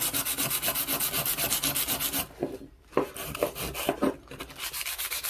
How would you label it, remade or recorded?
recorded